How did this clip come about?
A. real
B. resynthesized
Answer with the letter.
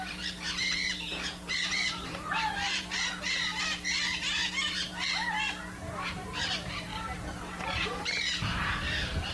B